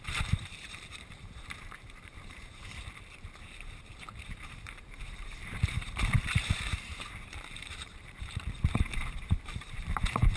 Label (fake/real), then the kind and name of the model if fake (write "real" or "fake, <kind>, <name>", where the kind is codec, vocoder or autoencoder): fake, vocoder, BigVGAN v2